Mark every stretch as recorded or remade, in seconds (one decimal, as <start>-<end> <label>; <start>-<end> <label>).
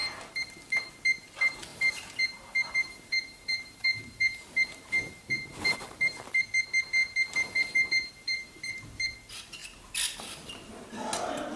0.0-1.7 recorded; 1.7-6.2 remade; 6.2-11.6 recorded